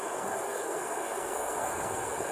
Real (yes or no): no